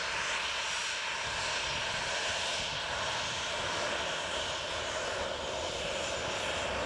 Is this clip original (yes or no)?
yes